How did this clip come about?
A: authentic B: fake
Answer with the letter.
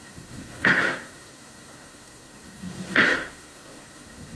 B